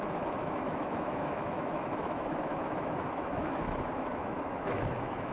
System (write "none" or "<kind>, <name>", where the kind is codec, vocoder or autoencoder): autoencoder, DAC-VAE